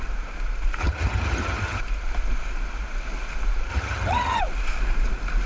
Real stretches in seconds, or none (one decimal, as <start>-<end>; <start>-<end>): 0.0-0.8; 1.8-3.7; 4.4-5.5